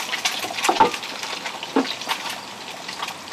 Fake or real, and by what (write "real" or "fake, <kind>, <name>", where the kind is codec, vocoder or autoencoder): real